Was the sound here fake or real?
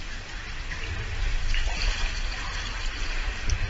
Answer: real